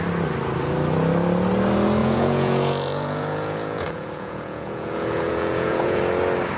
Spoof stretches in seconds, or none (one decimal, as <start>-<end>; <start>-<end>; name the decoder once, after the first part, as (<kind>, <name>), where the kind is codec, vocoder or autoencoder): 2.0-6.0 (vocoder, Vocos)